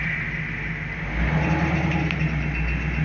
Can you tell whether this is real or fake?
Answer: real